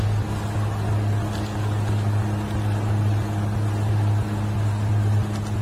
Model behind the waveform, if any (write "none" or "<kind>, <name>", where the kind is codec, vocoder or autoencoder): none